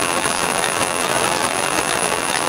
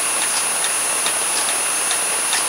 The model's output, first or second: first